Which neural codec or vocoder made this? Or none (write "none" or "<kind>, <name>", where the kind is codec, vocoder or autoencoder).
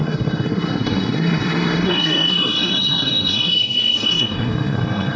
codec, SNAC